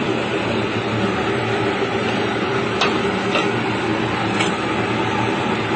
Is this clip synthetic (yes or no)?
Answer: no